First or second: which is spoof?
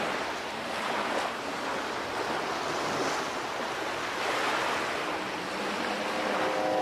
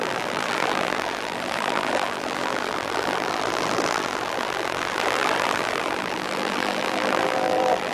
second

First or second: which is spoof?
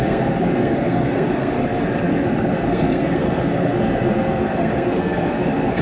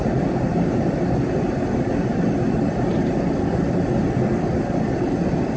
first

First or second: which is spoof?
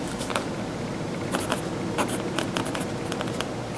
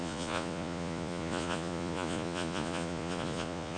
second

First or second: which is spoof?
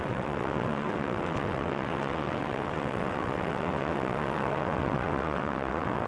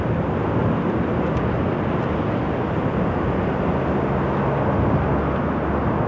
first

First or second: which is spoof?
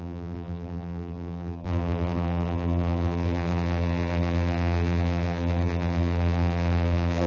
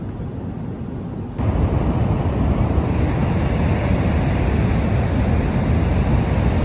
first